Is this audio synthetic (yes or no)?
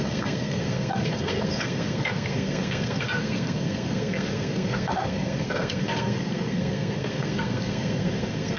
yes